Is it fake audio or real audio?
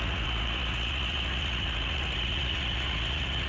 fake